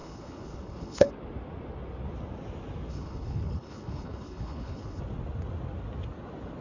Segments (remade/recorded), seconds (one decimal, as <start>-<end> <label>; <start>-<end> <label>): 0.0-1.1 remade; 1.1-2.9 recorded; 2.9-5.0 remade; 5.0-6.6 recorded